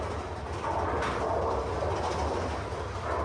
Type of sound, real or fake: real